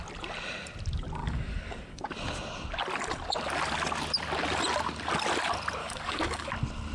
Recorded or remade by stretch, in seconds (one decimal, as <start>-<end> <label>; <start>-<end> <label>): 0.0-1.2 recorded; 1.2-2.0 remade; 2.0-5.8 recorded; 5.8-6.5 remade; 6.5-6.9 recorded

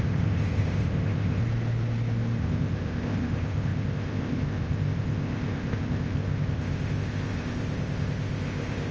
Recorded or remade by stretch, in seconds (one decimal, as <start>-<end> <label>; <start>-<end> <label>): 0.0-1.4 remade; 1.4-2.4 recorded; 2.4-8.9 remade

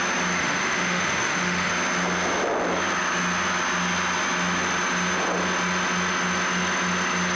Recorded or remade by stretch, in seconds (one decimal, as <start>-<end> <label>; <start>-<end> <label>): 0.0-0.4 recorded; 0.4-1.7 remade; 1.7-7.4 recorded

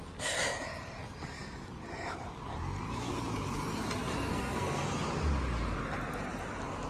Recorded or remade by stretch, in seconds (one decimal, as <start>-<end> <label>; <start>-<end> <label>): 0.0-4.3 recorded; 4.3-4.9 remade; 4.9-6.9 recorded